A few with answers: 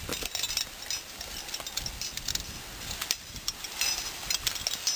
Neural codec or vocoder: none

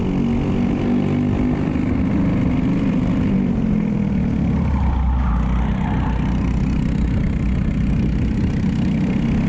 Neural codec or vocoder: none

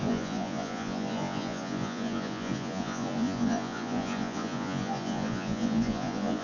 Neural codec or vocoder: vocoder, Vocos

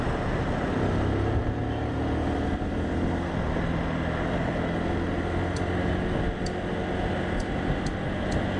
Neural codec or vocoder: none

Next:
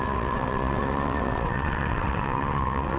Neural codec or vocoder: vocoder, WaveNeXt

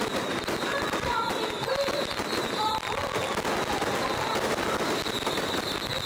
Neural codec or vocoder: none